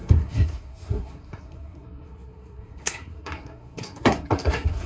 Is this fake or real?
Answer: fake